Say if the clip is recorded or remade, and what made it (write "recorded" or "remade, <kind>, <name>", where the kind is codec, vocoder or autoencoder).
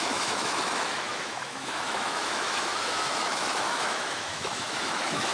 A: remade, autoencoder, DAC-VAE